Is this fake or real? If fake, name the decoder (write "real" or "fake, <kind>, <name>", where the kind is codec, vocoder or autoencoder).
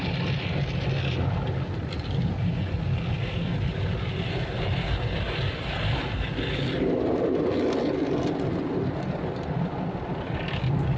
real